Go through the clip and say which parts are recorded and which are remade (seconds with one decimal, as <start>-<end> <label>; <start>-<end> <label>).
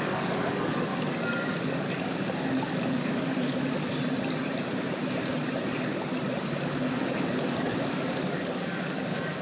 0.0-0.9 remade; 0.9-1.6 recorded; 1.6-3.8 remade; 3.8-6.4 recorded; 6.4-9.4 remade